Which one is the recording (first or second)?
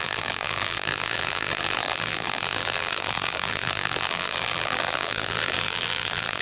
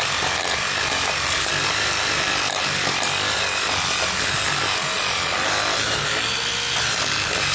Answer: second